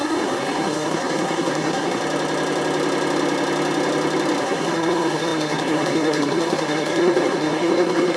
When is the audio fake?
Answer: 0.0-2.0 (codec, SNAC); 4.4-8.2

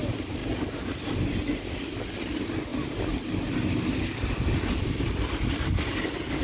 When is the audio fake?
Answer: none